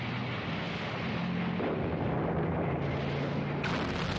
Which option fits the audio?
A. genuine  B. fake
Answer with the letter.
A